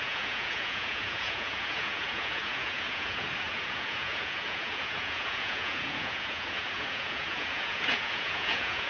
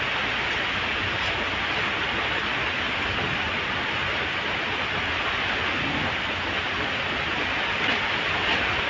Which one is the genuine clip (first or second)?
second